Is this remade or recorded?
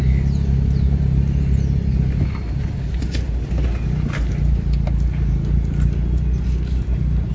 recorded